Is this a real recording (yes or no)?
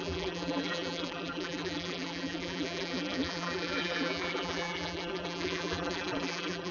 no